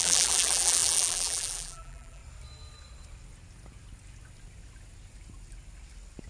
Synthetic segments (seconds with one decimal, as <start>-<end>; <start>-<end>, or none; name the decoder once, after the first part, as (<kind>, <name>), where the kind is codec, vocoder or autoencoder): 0.0-2.2 (vocoder, BigVGAN v2)